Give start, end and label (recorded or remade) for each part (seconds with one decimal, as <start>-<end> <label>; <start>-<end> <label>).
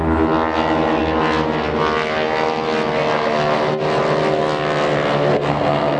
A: 0.0-5.3 recorded; 5.3-6.0 remade